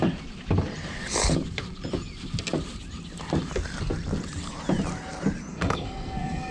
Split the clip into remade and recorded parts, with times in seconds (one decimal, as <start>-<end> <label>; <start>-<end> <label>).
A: 0.0-5.5 recorded; 5.5-6.5 remade

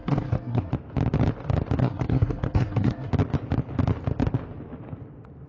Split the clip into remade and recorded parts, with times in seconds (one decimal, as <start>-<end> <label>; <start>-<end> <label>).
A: 0.0-0.7 remade; 0.7-1.8 recorded; 1.8-3.1 remade; 3.1-5.5 recorded